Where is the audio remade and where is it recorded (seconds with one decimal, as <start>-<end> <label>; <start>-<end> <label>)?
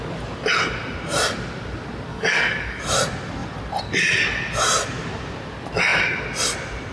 0.0-2.1 recorded; 2.1-2.8 remade; 2.8-6.9 recorded